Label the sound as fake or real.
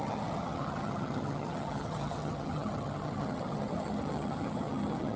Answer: fake